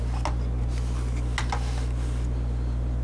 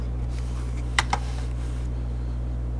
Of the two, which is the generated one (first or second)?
second